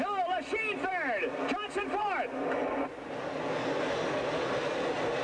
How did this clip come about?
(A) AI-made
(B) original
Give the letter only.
B